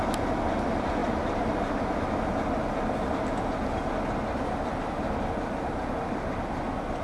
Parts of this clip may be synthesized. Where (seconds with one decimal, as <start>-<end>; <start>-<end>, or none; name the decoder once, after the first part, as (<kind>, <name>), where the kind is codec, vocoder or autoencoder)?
1.0-1.7 (vocoder, BigVGAN v2)